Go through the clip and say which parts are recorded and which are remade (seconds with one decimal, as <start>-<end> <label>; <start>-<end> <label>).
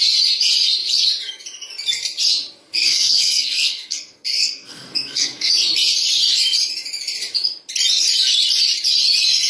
0.0-2.8 recorded; 2.8-5.5 remade; 5.5-9.5 recorded